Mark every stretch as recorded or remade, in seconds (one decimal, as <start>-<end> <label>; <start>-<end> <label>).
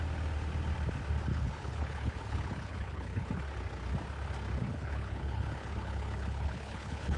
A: 0.0-1.3 recorded; 1.3-3.4 remade; 3.4-4.6 recorded; 4.6-7.2 remade